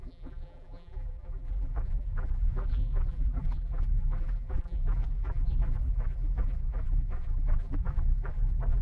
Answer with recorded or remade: remade